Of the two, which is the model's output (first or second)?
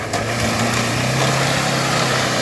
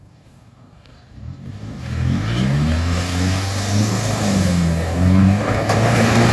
second